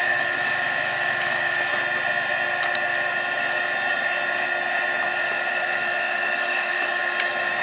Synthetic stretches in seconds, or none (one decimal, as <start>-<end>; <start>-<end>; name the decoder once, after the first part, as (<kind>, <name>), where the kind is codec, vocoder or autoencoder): 0.0-1.7 (autoencoder, DAC-VAE); 5.5-7.0